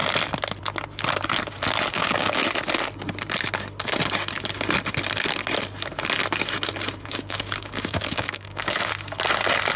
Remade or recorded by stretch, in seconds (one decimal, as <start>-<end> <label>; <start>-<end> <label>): 0.0-1.9 recorded; 1.9-2.4 remade; 2.4-7.0 recorded; 7.0-8.9 remade; 8.9-9.8 recorded